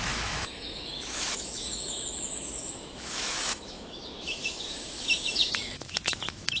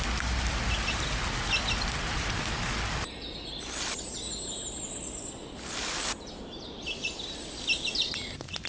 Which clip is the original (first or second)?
second